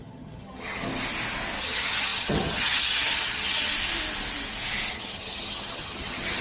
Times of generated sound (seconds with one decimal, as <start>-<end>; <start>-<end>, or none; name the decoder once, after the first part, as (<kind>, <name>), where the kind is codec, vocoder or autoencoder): 0.0-0.9 (vocoder, HiFi-GAN); 1.6-3.7; 4.9-6.4